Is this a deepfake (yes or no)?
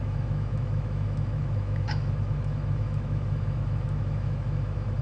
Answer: yes